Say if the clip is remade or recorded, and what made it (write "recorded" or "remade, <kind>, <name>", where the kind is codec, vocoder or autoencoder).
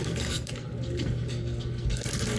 remade, codec, SNAC